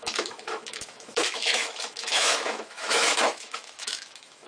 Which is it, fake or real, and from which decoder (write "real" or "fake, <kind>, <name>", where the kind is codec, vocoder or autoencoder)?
fake, autoencoder, DAC-VAE